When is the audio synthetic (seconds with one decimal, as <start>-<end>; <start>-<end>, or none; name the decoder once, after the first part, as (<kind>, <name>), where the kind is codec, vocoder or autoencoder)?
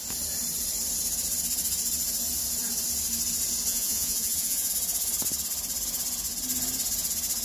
3.7-4.7 (vocoder, Vocos)